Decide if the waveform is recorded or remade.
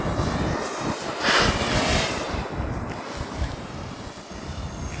recorded